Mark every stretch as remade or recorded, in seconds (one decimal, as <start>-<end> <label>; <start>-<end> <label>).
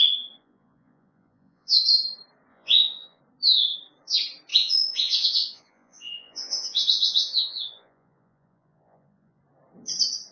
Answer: 0.0-0.4 recorded; 0.4-1.8 remade; 1.8-2.5 recorded; 2.5-3.2 remade; 3.2-4.5 recorded; 4.5-9.4 remade; 9.4-10.3 recorded